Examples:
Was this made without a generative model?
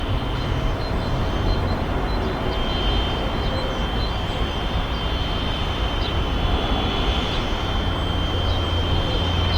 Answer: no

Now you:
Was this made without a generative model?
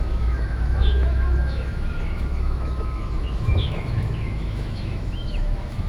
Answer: no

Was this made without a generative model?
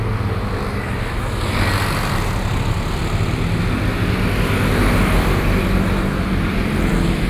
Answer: yes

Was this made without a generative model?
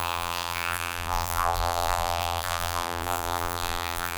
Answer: no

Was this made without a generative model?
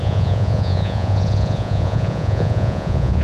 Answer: no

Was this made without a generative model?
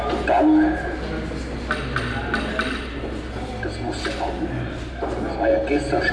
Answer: yes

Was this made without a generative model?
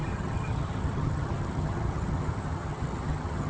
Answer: no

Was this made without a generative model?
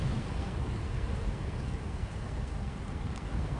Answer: no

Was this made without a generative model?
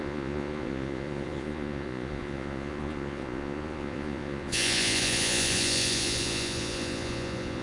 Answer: no